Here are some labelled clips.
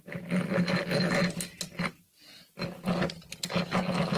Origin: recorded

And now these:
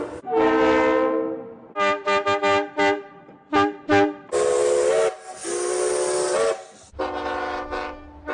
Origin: recorded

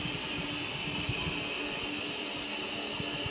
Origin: recorded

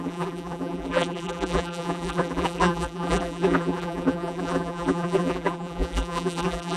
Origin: remade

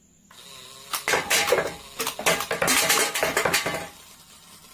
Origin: recorded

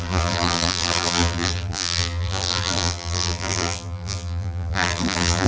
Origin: remade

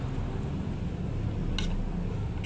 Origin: recorded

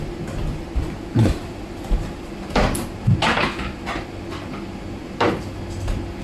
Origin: recorded